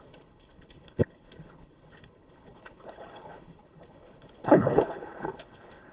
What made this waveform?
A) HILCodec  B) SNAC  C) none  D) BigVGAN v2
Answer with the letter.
A